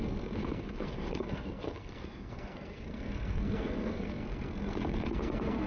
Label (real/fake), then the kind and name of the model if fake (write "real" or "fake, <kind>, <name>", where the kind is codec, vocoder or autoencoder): fake, codec, SNAC